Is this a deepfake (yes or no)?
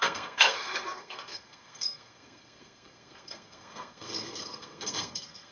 yes